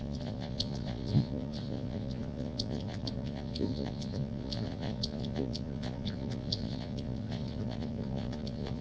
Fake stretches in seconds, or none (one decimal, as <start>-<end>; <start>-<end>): 0.0-8.8